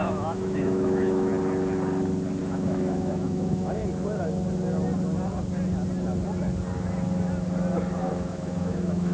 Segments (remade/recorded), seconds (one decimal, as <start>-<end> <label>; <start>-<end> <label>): 0.0-1.3 remade; 1.3-2.4 recorded; 2.4-3.8 remade; 3.8-8.0 recorded; 8.0-9.1 remade